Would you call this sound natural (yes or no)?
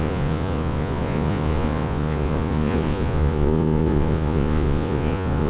no